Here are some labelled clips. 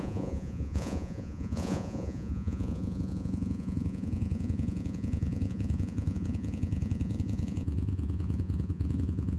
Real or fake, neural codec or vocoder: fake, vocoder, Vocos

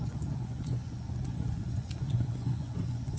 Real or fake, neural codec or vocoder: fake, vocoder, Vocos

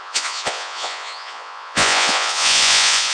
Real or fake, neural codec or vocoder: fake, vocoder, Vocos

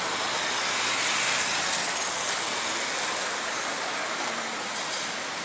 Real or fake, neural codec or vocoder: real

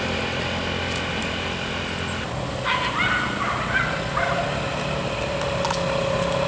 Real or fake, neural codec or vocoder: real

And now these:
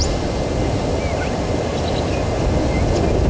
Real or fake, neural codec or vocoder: real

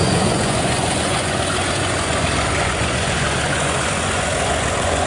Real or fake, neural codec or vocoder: fake, vocoder, Vocos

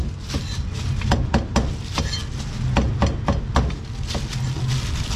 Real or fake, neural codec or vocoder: real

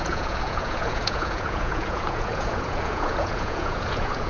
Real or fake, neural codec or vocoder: fake, vocoder, Vocos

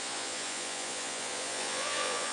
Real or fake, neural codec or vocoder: fake, vocoder, Vocos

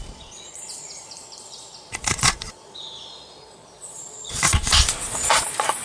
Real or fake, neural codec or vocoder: fake, vocoder, Vocos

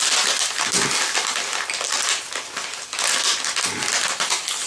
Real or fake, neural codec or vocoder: real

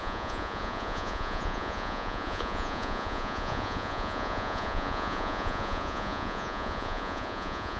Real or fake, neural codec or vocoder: fake, vocoder, Vocos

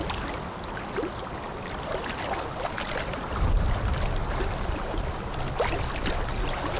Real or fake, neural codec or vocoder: real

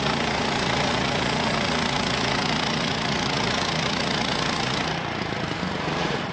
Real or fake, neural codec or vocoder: fake, vocoder, Vocos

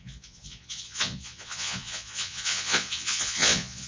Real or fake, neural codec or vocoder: fake, vocoder, Vocos